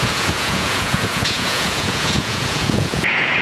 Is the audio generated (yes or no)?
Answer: yes